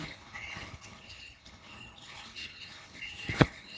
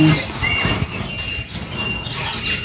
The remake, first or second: first